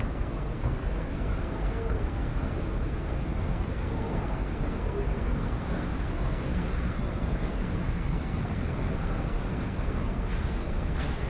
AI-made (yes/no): yes